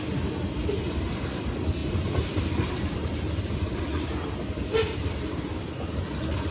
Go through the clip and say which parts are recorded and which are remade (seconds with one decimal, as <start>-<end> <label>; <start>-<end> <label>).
0.0-1.8 recorded; 1.8-5.7 remade; 5.7-6.5 recorded